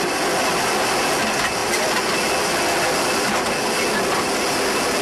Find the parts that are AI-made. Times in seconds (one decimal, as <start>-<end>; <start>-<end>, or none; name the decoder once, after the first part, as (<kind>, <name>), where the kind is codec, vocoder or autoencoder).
none